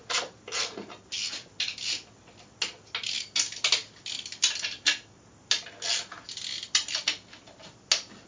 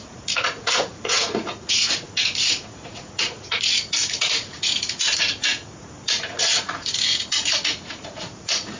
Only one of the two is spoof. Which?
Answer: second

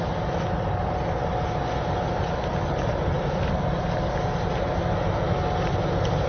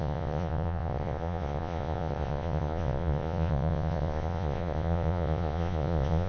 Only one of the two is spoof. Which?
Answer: second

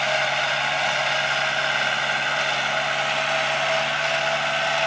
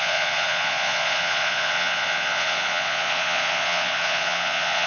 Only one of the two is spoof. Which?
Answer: second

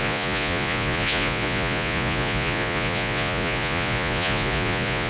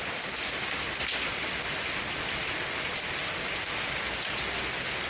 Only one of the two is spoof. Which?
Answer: first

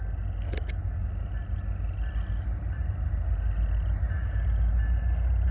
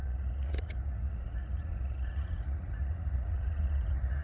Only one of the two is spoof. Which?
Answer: second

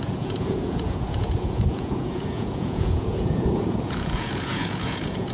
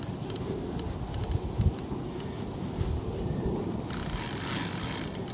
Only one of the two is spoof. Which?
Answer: first